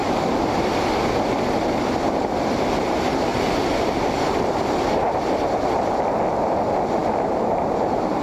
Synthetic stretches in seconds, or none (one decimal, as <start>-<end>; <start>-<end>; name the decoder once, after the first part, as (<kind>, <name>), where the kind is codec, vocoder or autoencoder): 0.0-0.6 (vocoder, BigVGAN v2); 3.3-4.2; 7.0-8.2